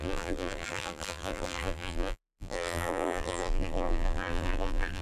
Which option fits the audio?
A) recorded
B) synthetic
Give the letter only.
B